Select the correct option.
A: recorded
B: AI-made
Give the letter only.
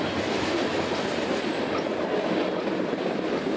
A